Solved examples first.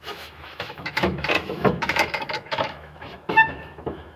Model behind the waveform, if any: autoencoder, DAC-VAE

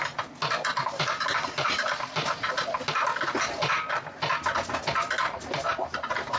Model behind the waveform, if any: none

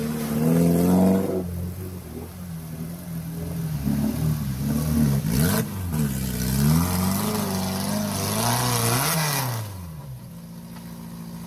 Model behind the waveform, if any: none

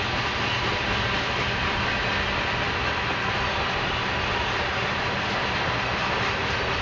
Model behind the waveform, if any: none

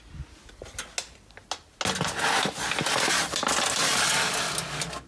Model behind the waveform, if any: none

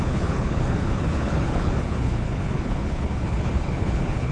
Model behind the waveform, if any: codec, HILCodec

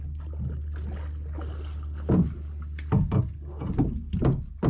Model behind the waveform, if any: none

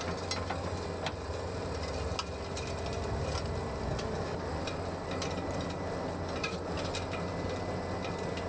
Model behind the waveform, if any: none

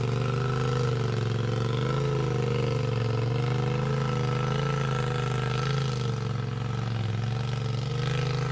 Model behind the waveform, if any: none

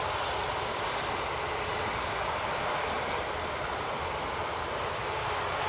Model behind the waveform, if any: none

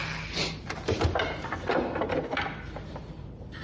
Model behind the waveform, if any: none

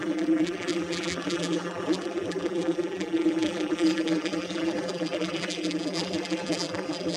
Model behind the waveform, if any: vocoder, BigVGAN v2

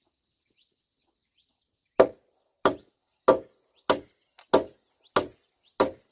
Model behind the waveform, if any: none